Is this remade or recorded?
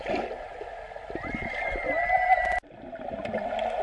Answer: recorded